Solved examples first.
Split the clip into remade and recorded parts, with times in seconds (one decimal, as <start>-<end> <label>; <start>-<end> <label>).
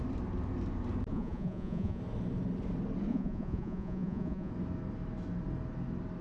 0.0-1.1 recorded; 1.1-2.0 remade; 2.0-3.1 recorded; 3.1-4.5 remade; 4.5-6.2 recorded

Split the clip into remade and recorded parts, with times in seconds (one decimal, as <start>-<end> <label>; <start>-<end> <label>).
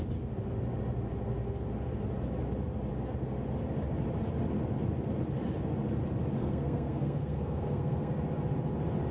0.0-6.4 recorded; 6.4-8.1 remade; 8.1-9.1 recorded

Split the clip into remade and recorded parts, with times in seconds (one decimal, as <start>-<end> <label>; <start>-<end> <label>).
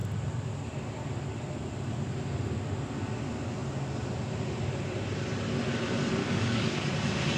0.0-6.2 recorded; 6.2-6.9 remade; 6.9-7.4 recorded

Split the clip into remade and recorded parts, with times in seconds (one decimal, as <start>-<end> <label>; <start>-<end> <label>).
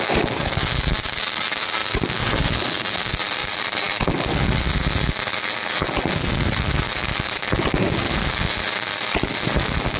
0.0-10.0 recorded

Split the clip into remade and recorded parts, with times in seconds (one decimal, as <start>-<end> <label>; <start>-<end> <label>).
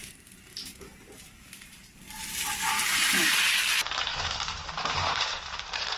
0.0-3.5 remade; 3.5-4.1 recorded; 4.1-6.0 remade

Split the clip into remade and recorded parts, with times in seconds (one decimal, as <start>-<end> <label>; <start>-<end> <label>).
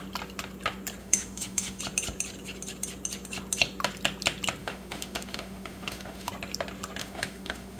0.0-1.0 recorded; 1.0-1.8 remade; 1.8-4.6 recorded; 4.6-6.3 remade; 6.3-7.0 recorded; 7.0-7.8 remade